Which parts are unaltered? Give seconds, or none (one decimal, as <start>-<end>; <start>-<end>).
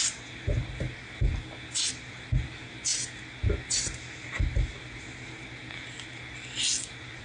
0.0-7.2